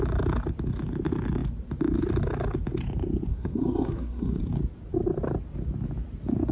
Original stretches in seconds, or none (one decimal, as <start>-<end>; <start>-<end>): 0.0-3.3; 4.4-6.5

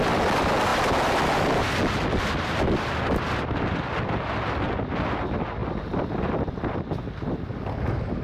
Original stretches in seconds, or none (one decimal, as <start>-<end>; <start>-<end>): 0.0-8.2